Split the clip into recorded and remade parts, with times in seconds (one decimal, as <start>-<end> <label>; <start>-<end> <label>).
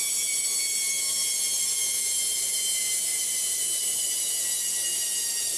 0.0-3.1 recorded; 3.1-4.1 remade; 4.1-5.6 recorded